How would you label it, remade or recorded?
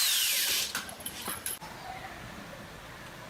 recorded